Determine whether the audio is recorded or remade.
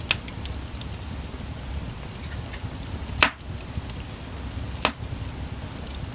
recorded